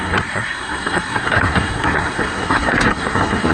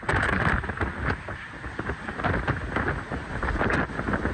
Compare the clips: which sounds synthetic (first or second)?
first